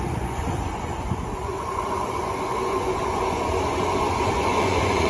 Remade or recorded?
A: remade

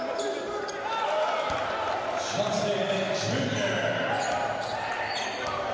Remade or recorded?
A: recorded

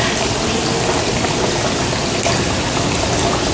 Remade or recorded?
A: recorded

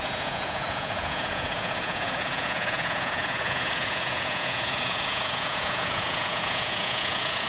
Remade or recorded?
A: remade